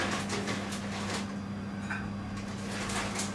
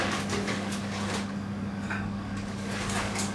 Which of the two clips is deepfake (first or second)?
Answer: second